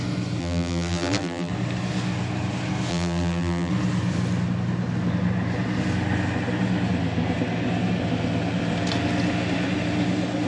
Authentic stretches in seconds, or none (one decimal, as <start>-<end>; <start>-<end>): 0.0-0.4; 1.5-2.9; 3.7-10.5